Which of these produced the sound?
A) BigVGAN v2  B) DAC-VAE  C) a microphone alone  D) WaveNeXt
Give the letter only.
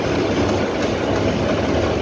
C